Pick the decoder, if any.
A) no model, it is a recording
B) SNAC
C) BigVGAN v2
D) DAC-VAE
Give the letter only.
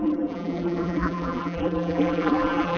C